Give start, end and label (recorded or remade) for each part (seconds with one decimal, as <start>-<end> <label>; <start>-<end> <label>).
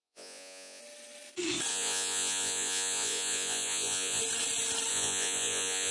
0.0-0.8 remade; 0.8-1.7 recorded; 1.7-4.2 remade; 4.2-4.9 recorded; 4.9-5.9 remade